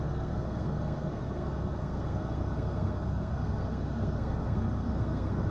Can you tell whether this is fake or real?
fake